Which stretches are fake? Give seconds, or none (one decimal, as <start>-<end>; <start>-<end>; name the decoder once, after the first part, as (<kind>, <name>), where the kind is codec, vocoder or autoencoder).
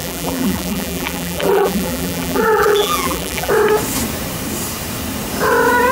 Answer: 0.0-3.5 (vocoder, BigVGAN v2)